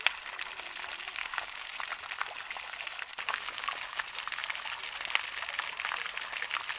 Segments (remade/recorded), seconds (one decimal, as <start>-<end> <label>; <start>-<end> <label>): 0.0-1.2 recorded; 1.2-1.8 remade; 1.8-3.3 recorded; 3.3-4.0 remade; 4.0-6.8 recorded